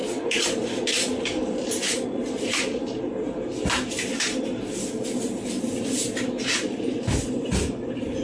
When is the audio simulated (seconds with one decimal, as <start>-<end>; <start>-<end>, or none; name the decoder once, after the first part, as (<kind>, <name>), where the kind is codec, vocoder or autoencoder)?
1.4-3.1 (vocoder, BigVGAN v2)